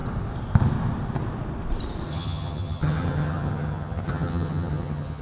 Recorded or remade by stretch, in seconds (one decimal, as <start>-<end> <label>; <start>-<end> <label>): 0.0-2.1 recorded; 2.1-5.2 remade